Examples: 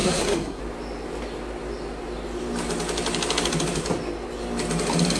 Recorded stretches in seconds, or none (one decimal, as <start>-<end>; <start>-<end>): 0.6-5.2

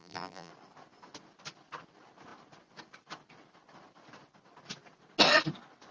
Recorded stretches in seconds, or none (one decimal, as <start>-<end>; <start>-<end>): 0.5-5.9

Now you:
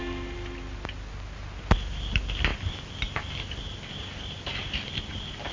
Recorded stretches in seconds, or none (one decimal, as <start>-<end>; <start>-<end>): 0.0-5.5

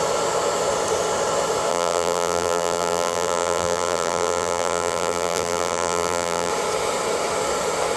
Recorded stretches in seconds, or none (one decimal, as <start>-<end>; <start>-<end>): 0.0-1.7; 6.5-8.0